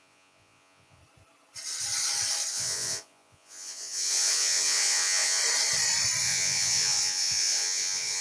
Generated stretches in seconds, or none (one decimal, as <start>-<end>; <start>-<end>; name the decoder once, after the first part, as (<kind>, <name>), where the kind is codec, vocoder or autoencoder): 0.0-1.0 (vocoder, Vocos); 2.5-5.4; 6.2-8.2